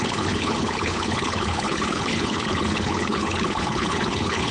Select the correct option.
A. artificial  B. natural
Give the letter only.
A